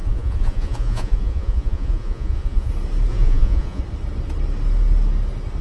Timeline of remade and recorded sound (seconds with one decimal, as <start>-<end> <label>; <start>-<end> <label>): 0.0-2.7 remade; 2.7-3.1 recorded; 3.1-3.8 remade; 3.8-5.6 recorded